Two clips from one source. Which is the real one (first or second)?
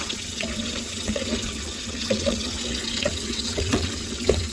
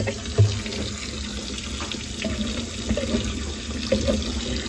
second